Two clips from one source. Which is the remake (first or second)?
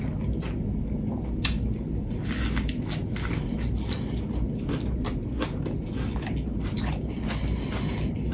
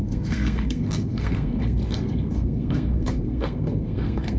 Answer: second